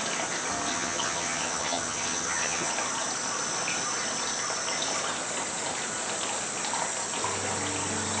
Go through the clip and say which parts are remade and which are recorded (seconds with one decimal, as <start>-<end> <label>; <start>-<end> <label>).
0.0-0.7 recorded; 0.7-2.7 remade; 2.7-8.2 recorded